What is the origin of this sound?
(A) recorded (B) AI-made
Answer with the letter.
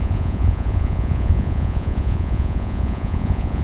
B